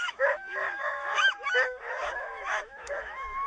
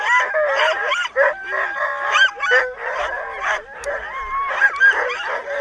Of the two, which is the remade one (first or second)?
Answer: first